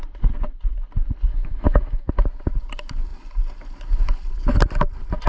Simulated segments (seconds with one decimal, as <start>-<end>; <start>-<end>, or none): 1.3-2.1